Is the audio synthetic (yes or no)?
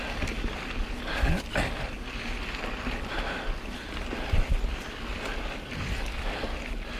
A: no